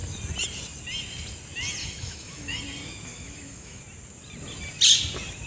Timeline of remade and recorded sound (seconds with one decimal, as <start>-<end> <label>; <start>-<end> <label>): 0.0-1.8 recorded; 1.8-2.6 remade; 2.6-3.1 recorded; 3.1-3.8 remade; 3.8-5.5 recorded